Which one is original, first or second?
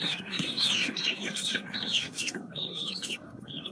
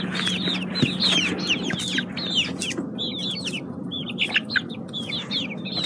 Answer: second